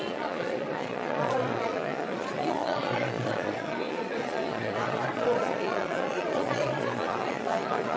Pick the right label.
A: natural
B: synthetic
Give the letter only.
B